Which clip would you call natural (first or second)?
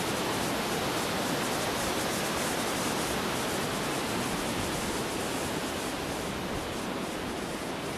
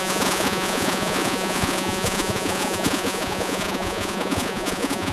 first